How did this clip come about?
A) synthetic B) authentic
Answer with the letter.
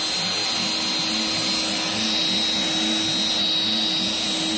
B